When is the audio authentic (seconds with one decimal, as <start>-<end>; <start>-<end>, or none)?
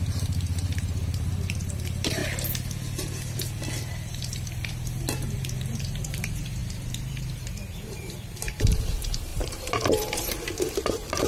2.2-4.1